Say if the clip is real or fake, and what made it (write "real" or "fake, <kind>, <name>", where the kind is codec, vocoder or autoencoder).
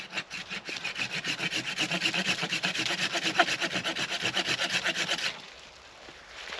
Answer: real